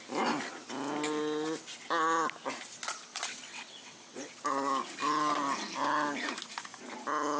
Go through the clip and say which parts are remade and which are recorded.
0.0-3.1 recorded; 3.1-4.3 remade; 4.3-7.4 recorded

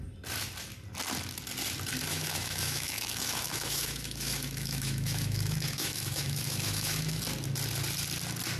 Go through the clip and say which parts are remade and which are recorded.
0.0-2.1 recorded; 2.1-7.2 remade; 7.2-8.6 recorded